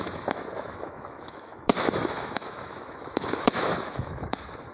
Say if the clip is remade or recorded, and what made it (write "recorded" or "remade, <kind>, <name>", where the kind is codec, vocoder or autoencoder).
remade, autoencoder, DAC-VAE